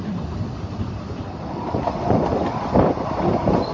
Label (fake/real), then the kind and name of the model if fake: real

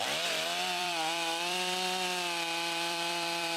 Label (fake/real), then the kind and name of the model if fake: fake, vocoder, BigVGAN v2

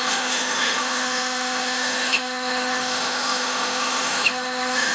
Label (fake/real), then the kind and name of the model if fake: fake, autoencoder, DAC-VAE